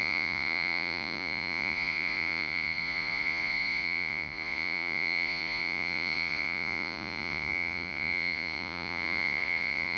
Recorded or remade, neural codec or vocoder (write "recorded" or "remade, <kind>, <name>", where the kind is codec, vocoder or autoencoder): remade, vocoder, Vocos